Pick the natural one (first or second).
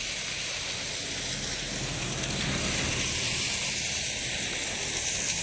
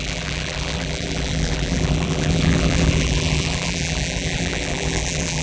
first